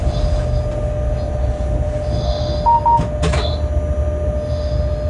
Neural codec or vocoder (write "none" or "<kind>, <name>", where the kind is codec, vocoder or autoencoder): none